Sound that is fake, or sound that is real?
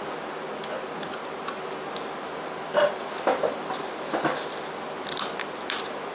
real